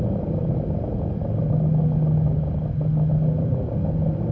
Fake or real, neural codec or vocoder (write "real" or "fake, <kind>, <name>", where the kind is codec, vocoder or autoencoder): real